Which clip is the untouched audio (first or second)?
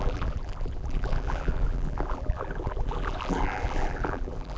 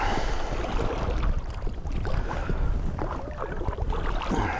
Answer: second